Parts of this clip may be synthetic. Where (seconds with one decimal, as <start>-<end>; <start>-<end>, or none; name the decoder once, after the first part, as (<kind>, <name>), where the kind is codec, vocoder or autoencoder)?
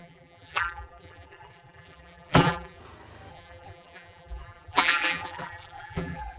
0.0-2.8 (vocoder, BigVGAN v2); 3.3-6.4